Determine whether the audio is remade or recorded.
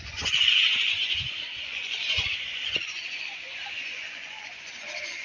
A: remade